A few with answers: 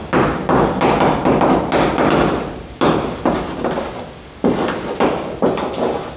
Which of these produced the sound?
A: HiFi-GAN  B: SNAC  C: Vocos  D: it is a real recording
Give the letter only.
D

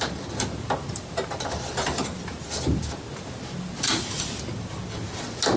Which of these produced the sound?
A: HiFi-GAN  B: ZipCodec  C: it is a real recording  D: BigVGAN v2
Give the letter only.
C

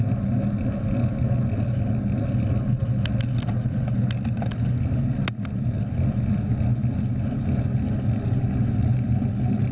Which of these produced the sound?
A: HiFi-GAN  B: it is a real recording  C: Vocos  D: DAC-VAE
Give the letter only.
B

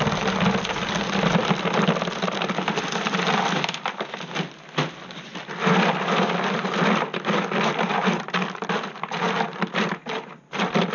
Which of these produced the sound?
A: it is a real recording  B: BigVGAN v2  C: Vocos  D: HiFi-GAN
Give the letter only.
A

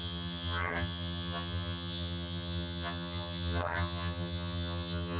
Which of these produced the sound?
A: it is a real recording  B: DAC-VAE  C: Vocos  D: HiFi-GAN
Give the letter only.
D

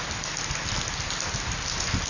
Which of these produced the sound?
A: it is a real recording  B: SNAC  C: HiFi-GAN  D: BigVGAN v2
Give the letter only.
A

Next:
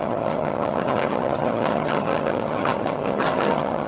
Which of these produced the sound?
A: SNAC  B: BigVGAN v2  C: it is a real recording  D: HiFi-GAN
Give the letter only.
D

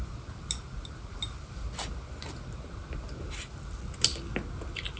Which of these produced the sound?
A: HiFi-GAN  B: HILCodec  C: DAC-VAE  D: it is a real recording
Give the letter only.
D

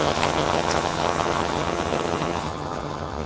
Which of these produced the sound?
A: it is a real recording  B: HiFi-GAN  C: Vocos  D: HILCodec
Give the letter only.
B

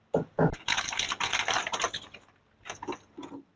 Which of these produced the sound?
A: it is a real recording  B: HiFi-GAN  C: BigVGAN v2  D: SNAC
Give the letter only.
A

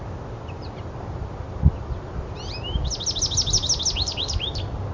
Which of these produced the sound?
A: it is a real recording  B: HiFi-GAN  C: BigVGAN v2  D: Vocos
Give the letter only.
A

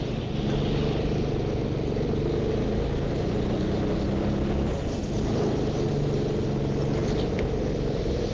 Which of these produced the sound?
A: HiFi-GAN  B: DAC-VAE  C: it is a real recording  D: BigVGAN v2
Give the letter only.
C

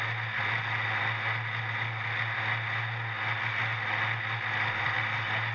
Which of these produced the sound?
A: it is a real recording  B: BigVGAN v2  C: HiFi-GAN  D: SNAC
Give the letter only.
A